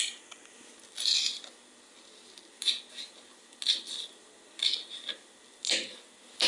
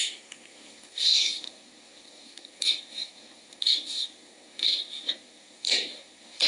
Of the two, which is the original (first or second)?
first